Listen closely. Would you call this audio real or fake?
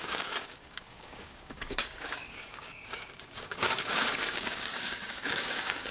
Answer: fake